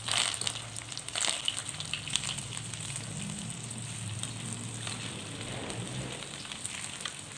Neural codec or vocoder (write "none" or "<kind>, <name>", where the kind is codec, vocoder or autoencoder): none